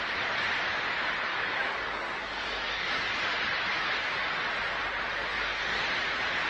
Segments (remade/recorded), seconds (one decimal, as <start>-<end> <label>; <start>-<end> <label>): 0.0-1.3 recorded; 1.3-2.9 remade; 2.9-5.3 recorded; 5.3-5.8 remade; 5.8-6.5 recorded